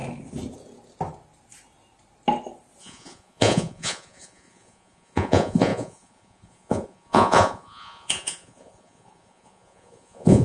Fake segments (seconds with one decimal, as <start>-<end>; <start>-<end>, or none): 2.8-10.4